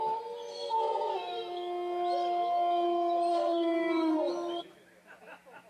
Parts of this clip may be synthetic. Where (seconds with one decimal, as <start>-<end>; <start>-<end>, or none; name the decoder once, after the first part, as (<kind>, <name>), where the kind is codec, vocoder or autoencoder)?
0.5-1.1 (codec, SNAC); 3.3-4.3

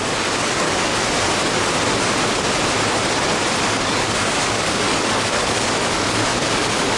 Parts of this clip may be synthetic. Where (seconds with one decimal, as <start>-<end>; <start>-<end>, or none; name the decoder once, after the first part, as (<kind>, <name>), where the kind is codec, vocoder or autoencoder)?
0.0-0.9 (codec, DAC); 3.6-7.0

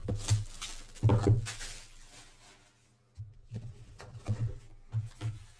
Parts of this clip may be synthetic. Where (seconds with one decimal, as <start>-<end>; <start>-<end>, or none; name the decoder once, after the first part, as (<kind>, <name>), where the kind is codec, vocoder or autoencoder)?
3.3-4.6 (vocoder, Vocos)

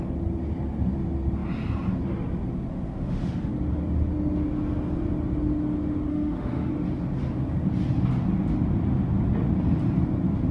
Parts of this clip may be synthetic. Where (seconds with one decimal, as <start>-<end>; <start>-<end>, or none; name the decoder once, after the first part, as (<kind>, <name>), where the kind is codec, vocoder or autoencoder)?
2.7-3.5 (autoencoder, DAC-VAE); 6.1-6.7

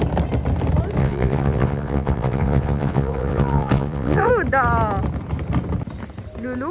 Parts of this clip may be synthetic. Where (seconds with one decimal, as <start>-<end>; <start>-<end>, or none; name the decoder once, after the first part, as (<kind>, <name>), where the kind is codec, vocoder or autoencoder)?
1.0-4.3 (vocoder, WaveNeXt)

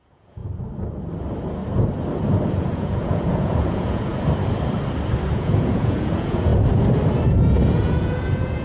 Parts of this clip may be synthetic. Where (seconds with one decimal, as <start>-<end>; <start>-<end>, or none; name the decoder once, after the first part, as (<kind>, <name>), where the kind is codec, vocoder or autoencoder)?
0.0-0.4 (vocoder, Vocos); 2.5-4.1; 5.3-6.5; 7.3-8.6

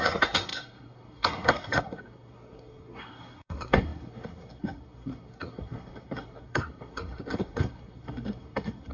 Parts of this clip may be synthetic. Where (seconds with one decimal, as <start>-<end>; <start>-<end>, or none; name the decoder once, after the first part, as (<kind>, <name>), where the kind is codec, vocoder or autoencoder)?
0.0-8.9 (codec, SNAC)